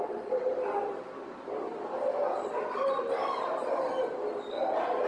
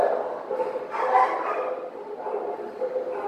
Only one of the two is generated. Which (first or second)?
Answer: first